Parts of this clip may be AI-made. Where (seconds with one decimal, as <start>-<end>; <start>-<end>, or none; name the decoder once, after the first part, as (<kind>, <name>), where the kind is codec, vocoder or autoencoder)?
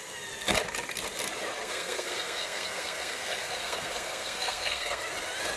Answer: 1.6-5.0 (codec, SNAC)